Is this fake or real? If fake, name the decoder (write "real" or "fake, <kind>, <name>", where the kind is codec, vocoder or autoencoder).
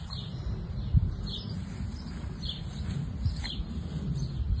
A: real